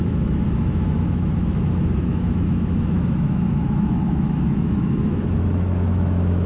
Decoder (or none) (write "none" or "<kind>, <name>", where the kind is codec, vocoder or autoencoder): autoencoder, DAC-VAE